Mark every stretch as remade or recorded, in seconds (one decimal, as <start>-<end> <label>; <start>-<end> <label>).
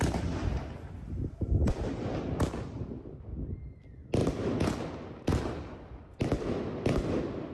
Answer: 0.0-7.5 recorded